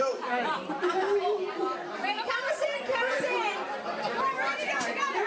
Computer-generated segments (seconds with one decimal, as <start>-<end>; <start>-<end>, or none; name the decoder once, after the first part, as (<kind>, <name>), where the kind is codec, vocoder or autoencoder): 0.0-5.3 (vocoder, BigVGAN v2)